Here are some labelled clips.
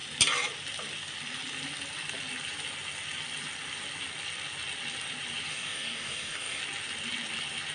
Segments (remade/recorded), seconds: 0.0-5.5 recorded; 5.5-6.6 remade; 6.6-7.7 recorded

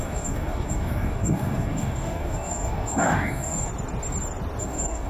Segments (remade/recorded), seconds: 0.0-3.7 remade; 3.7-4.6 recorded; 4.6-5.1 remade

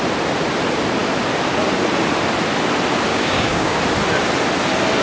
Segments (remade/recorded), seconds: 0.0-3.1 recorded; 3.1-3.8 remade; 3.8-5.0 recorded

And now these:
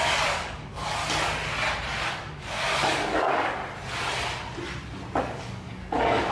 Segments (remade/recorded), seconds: 0.0-1.0 remade; 1.0-2.1 recorded; 2.1-3.6 remade; 3.6-5.2 recorded; 5.2-6.3 remade

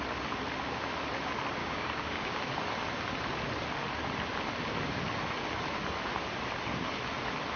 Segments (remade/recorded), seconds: 0.0-1.6 recorded; 1.6-2.5 remade; 2.5-7.6 recorded

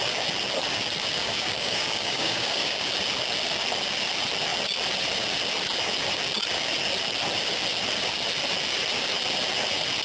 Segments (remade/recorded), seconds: 0.0-1.2 recorded; 1.2-2.9 remade; 2.9-10.0 recorded

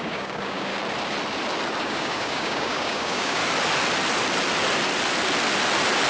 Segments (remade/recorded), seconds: 0.0-0.7 remade; 0.7-1.8 recorded; 1.8-3.4 remade; 3.4-6.1 recorded

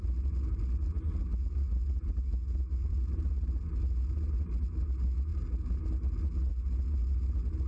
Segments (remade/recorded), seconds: 0.0-7.7 recorded